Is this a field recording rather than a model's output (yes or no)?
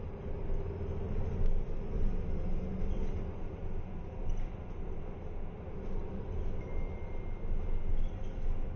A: yes